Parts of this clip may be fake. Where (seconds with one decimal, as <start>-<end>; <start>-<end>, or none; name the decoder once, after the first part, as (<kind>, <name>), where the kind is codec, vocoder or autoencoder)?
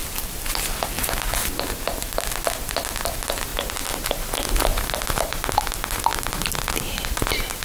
0.0-1.3 (vocoder, BigVGAN v2); 4.7-5.2; 6.1-6.7